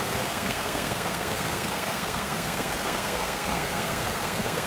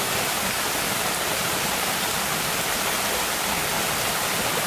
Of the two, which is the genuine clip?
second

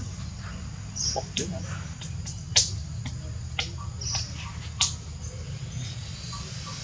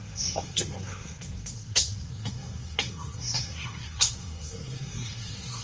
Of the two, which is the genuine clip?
first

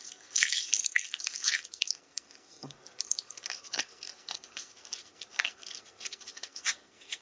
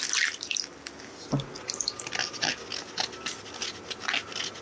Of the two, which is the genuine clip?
second